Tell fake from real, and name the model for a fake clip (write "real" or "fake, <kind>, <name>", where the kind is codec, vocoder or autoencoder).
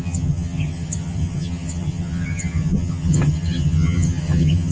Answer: fake, vocoder, HiFi-GAN